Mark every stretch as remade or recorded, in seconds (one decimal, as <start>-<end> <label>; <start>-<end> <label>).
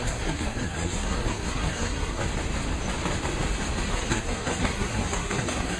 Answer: 0.0-2.2 remade; 2.2-3.9 recorded; 3.9-5.8 remade